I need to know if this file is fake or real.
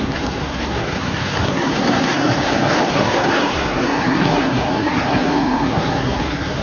fake